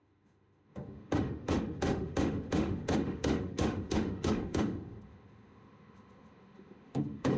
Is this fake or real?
fake